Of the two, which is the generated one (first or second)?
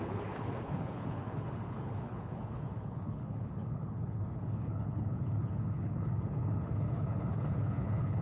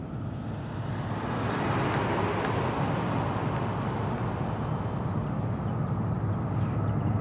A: first